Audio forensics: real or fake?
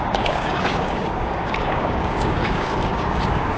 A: fake